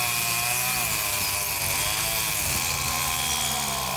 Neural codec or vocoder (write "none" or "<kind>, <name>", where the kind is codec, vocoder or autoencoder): none